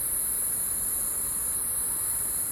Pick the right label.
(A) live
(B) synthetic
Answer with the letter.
A